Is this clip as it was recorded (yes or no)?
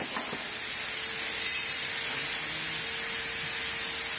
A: yes